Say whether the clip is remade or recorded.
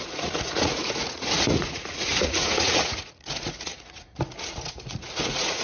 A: remade